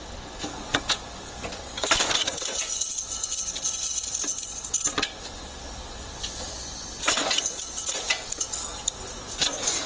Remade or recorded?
remade